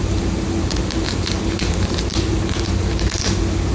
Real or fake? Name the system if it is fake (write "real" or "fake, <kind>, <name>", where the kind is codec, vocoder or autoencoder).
fake, vocoder, BigVGAN v2